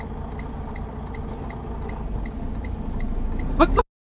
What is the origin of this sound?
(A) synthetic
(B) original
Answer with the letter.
B